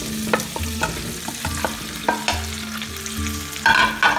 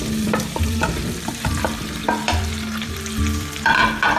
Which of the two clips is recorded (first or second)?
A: first